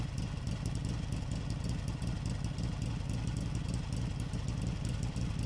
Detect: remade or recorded recorded